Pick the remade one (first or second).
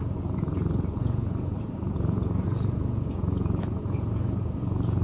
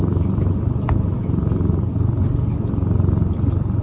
first